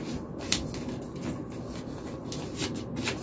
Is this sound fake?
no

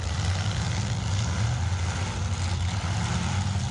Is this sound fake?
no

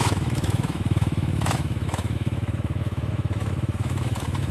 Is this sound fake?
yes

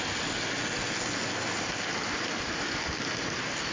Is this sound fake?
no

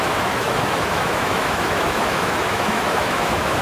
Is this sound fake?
yes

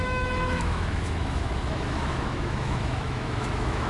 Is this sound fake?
yes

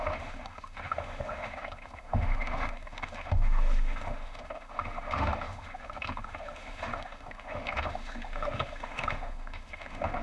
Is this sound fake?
yes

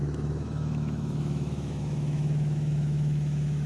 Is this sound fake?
yes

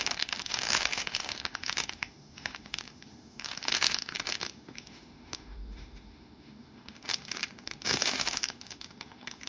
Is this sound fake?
yes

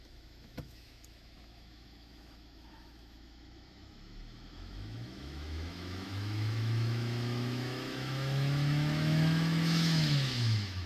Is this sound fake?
yes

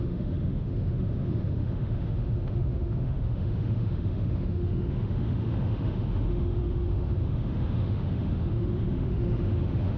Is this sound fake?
yes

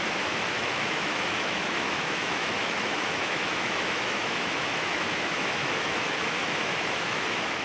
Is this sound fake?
yes